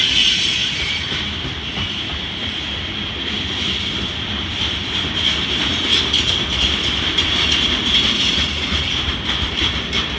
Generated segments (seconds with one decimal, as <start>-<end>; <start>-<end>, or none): 0.6-2.6; 5.7-9.5